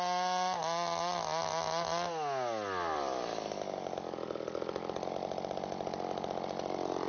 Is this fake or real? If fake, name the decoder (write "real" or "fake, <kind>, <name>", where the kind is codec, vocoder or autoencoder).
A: real